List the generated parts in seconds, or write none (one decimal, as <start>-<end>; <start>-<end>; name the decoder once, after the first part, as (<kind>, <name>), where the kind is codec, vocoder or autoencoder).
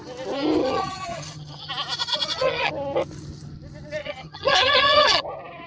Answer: 0.6-1.7 (vocoder, HiFi-GAN); 2.1-2.7; 4.0-5.2